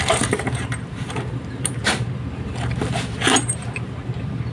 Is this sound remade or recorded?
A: remade